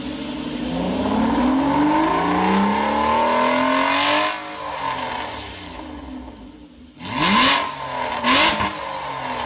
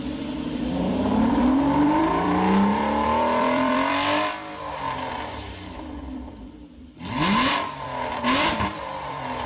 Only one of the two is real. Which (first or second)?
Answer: first